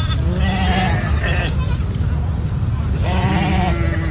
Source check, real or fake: real